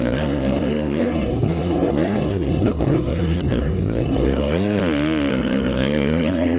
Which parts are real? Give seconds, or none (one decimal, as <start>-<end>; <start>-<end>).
4.8-5.3

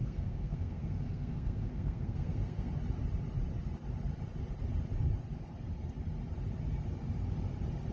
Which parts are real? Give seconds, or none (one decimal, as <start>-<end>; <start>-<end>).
2.7-7.9

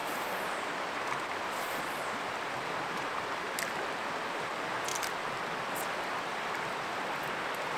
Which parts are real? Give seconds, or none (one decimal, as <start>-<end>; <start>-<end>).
0.0-7.8